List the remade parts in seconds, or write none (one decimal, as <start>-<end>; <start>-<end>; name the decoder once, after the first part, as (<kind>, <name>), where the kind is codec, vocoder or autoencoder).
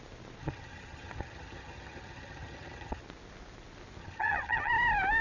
0.4-3.0 (vocoder, HiFi-GAN); 4.0-4.7